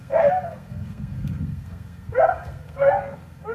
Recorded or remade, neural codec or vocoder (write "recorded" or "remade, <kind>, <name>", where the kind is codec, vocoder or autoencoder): remade, codec, SNAC